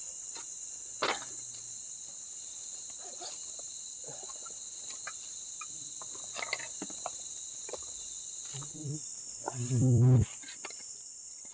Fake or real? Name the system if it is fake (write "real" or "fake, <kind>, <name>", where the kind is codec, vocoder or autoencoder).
fake, vocoder, BigVGAN v2